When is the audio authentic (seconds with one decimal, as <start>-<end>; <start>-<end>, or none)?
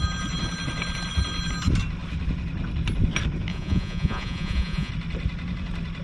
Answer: 0.0-3.5; 4.9-6.0